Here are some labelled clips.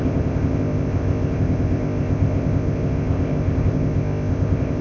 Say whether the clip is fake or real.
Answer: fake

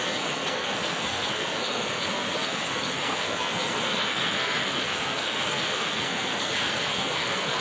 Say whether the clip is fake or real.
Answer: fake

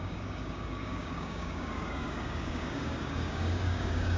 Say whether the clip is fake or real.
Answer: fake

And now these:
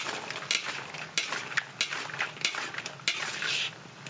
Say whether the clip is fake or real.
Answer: real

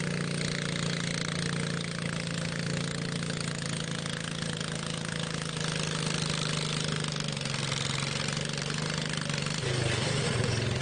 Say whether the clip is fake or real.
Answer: real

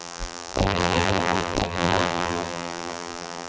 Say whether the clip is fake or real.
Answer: fake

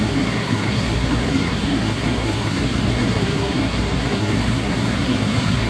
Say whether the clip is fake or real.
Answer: fake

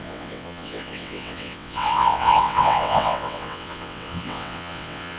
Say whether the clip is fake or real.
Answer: fake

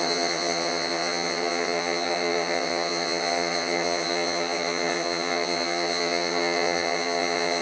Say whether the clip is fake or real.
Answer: fake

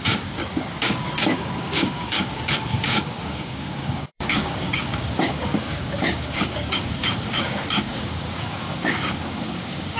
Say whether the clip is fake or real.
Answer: fake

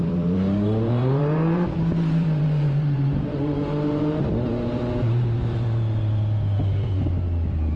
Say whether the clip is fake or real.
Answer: fake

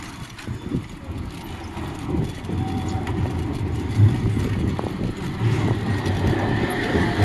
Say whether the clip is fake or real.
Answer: real